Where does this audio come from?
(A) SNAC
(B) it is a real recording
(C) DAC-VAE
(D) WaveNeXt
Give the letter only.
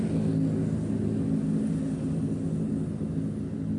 B